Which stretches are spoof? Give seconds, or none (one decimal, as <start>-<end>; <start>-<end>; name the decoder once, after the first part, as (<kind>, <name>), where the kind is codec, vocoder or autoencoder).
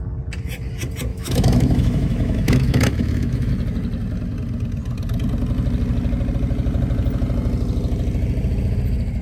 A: 1.1-3.5 (autoencoder, DAC-VAE)